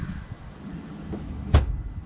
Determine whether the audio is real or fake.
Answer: real